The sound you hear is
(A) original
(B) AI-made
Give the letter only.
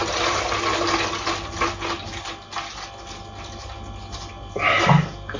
A